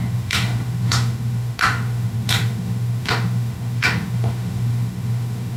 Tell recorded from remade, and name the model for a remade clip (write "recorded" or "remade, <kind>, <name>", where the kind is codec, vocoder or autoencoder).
remade, autoencoder, DAC-VAE